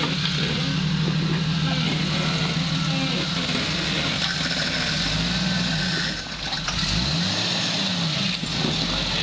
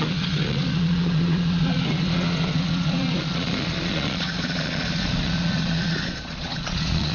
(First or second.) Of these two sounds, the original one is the first